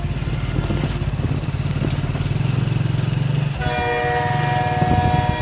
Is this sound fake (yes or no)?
no